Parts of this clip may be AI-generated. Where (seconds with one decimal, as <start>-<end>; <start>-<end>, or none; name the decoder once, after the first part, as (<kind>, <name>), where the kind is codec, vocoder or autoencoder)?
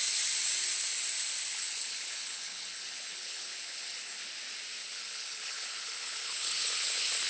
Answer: 1.5-4.2 (codec, HILCodec); 4.8-7.3